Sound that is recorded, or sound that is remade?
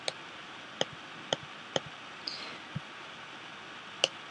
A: recorded